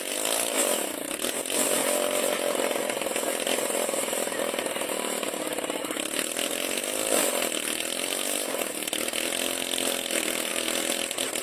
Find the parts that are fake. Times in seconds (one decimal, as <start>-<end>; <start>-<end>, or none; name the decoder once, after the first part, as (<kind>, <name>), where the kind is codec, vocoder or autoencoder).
none